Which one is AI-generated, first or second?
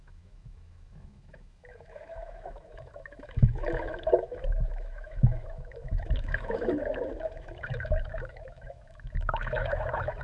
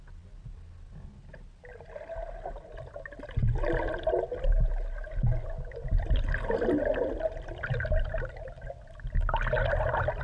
first